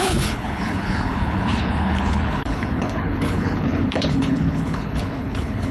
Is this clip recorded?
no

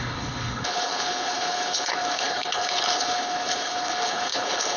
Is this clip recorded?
no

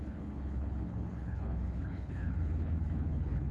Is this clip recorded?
no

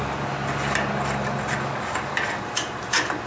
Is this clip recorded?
yes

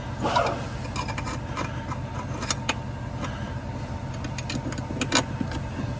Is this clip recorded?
yes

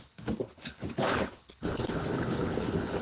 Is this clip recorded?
no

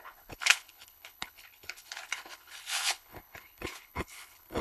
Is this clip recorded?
no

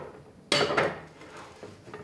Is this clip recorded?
yes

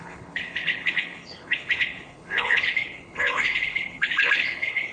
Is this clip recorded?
no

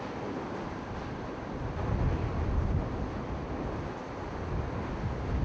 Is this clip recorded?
yes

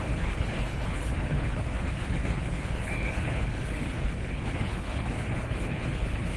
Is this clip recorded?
no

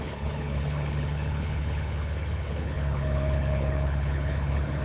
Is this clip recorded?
no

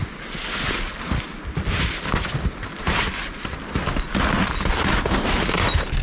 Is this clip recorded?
yes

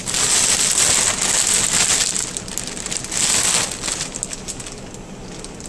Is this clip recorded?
yes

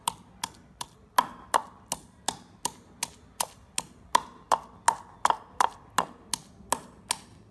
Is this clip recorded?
yes